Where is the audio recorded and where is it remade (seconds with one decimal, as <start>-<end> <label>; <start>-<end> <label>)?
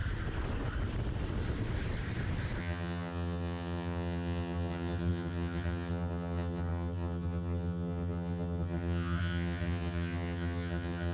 0.0-2.6 recorded; 2.6-11.1 remade